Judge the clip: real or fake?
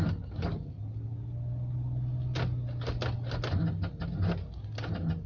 real